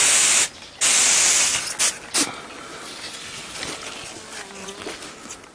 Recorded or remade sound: recorded